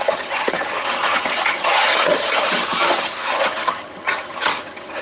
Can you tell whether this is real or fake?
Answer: fake